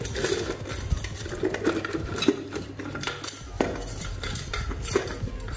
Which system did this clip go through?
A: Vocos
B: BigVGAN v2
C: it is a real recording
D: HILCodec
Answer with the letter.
C